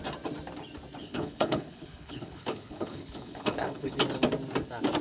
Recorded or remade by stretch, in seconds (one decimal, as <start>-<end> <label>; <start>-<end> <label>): 0.0-1.0 recorded; 1.0-4.0 remade; 4.0-5.0 recorded